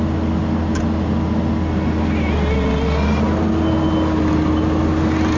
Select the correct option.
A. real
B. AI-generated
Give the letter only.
A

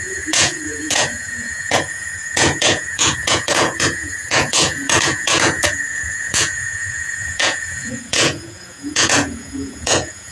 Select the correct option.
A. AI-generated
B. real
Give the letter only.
A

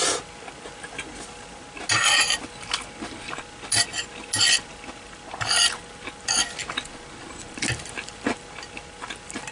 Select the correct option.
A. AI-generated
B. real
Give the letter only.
B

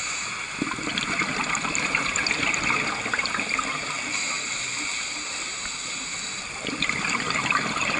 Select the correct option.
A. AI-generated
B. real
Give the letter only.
B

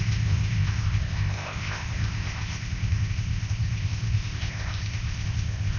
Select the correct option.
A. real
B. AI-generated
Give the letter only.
B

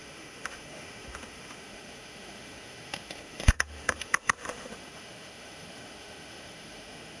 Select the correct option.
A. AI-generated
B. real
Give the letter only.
A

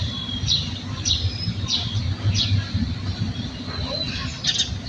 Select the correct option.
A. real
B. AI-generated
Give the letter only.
A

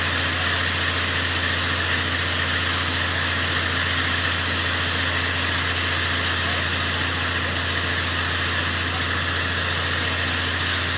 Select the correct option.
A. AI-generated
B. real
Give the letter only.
B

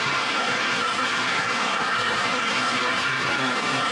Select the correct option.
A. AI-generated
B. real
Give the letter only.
A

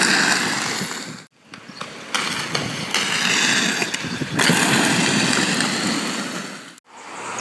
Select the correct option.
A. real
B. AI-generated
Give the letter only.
A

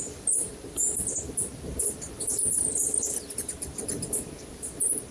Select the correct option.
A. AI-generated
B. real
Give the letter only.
A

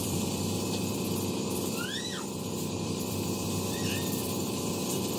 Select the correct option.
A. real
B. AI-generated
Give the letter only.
B